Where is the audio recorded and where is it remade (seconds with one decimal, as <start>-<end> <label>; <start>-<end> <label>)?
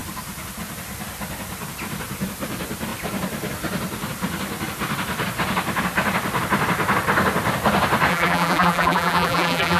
0.0-8.1 recorded; 8.1-9.8 remade